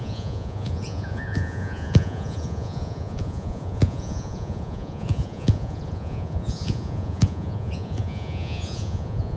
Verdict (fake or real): fake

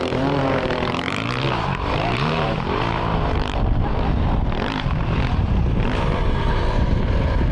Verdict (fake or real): fake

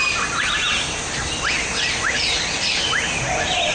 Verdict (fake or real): real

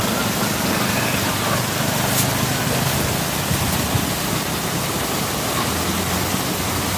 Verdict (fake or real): real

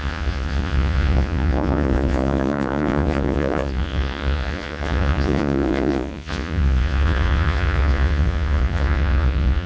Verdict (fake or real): fake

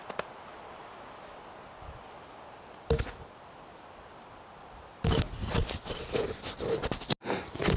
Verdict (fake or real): real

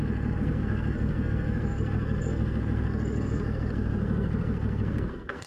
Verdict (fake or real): fake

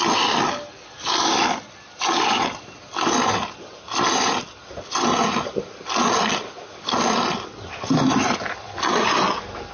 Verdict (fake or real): real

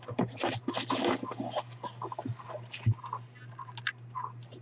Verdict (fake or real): real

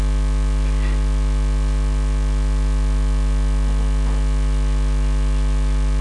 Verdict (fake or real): real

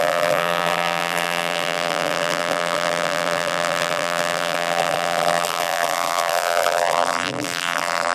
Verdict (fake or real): fake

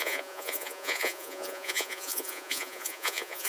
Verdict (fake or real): fake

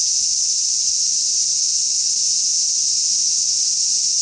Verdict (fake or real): real